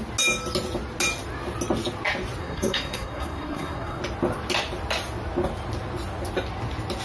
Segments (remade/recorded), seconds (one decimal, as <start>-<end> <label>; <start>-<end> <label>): 0.0-2.4 recorded; 2.4-4.0 remade; 4.0-7.0 recorded